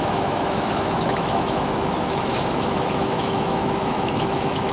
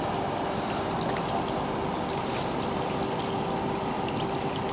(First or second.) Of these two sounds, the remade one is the first